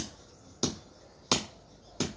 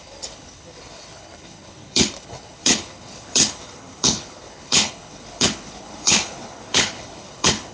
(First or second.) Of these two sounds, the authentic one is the first